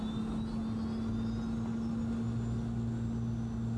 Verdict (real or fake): real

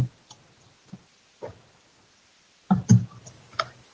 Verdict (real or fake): real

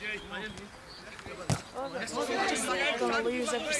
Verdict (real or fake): real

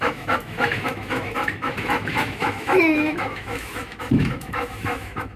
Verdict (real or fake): fake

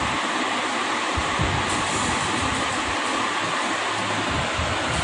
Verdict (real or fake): real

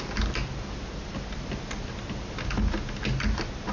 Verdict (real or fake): real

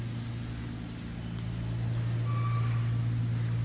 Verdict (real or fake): real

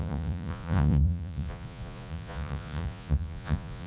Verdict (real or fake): fake